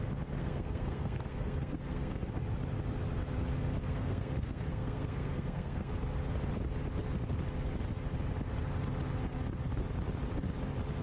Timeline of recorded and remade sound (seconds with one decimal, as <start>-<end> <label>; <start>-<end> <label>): 0.0-0.4 recorded; 0.4-2.3 remade; 2.3-3.8 recorded; 3.8-5.9 remade; 5.9-11.0 recorded